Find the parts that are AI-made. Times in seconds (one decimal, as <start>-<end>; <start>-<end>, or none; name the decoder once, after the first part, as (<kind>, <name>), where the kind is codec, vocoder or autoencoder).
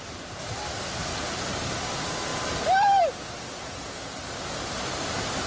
none